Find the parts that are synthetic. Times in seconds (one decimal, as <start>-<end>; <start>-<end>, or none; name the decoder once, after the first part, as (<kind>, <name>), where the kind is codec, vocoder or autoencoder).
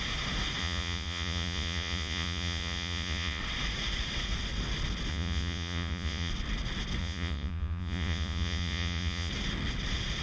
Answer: 0.6-3.4 (vocoder, Vocos); 5.1-6.3; 7.0-9.3